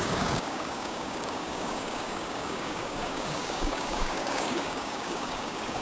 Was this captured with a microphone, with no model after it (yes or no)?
no